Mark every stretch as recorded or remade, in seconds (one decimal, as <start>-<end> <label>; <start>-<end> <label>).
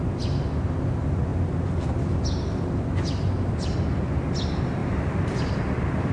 0.0-4.8 recorded; 4.8-5.6 remade; 5.6-6.1 recorded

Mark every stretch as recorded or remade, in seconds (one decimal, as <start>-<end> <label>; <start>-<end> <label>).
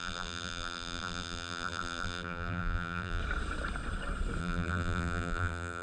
0.0-3.2 remade; 3.2-4.4 recorded; 4.4-5.8 remade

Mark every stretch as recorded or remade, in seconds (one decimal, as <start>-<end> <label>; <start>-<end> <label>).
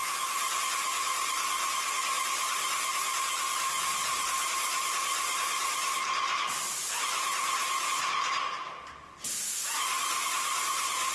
0.0-4.0 recorded; 4.0-7.9 remade; 7.9-11.1 recorded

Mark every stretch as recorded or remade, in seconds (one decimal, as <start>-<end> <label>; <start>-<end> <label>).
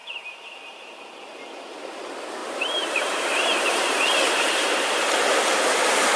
0.0-1.2 remade; 1.2-2.4 recorded; 2.4-5.0 remade; 5.0-6.2 recorded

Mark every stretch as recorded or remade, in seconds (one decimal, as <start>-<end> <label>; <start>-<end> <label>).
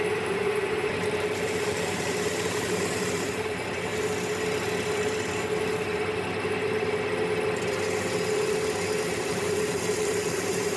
0.0-3.9 remade; 3.9-9.0 recorded; 9.0-10.8 remade